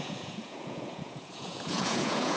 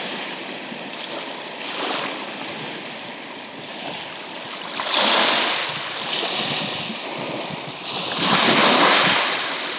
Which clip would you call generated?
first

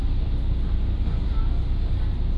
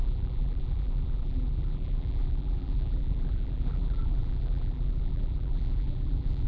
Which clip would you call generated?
second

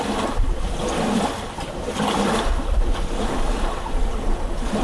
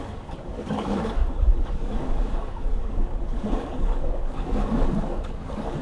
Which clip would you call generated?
second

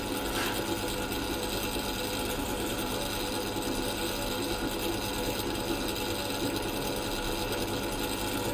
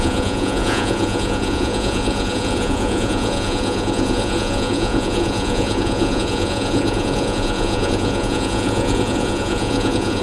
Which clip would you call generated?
second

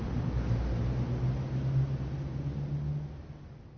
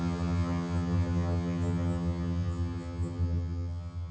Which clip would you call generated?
second